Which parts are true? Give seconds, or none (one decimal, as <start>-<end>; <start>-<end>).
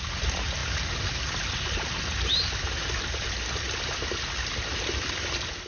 0.0-5.7